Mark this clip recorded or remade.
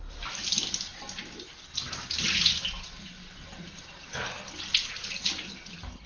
recorded